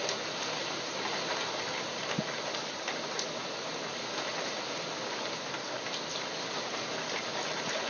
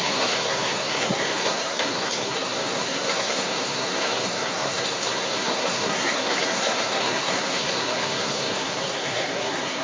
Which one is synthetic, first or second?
second